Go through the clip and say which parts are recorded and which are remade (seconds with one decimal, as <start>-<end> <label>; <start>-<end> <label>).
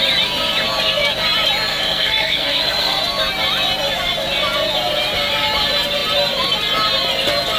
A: 0.0-1.7 recorded; 1.7-3.0 remade; 3.0-7.6 recorded